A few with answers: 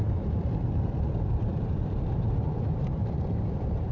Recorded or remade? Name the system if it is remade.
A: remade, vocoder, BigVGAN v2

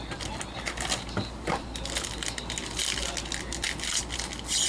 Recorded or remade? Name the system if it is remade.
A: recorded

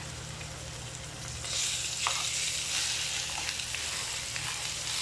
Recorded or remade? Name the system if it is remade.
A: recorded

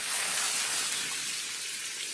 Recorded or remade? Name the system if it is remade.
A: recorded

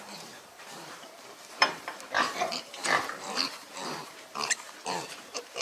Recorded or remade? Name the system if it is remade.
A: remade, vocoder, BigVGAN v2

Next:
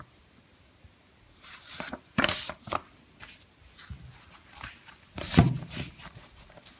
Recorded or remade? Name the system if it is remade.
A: remade, vocoder, BigVGAN v2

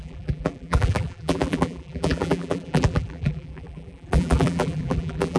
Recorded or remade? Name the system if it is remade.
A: remade, vocoder, BigVGAN v2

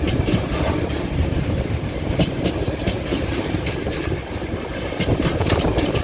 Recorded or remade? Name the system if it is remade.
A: remade, vocoder, BigVGAN v2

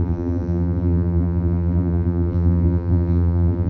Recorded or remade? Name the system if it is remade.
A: remade, vocoder, BigVGAN v2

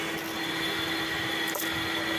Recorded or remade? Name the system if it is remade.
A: remade, vocoder, BigVGAN v2